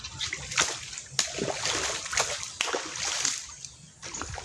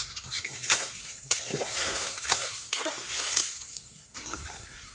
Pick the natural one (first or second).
first